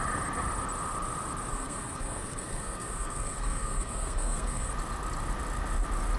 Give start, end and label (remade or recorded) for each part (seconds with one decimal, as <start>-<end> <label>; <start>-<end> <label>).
0.0-1.5 recorded; 1.5-4.7 remade; 4.7-6.2 recorded